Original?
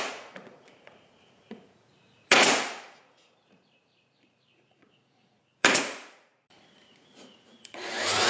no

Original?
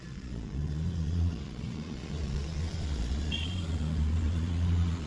no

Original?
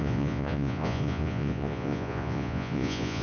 no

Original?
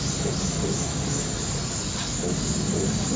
yes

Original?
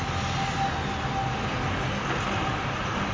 yes